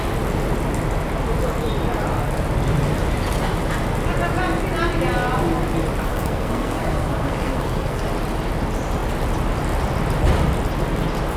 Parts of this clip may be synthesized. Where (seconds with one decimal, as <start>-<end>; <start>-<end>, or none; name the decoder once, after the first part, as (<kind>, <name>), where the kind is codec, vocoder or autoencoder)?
6.1-8.0 (codec, SNAC)